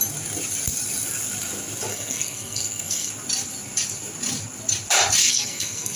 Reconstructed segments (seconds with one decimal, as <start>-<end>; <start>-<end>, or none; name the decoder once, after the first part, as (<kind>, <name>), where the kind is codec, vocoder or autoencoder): 1.9-3.1 (codec, SNAC); 5.2-6.0